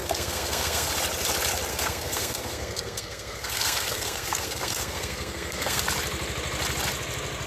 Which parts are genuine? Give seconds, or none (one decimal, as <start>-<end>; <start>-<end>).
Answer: 0.9-1.7; 5.8-7.5